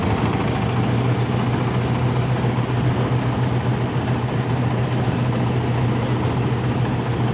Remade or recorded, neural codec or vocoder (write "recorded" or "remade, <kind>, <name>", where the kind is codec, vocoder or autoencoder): recorded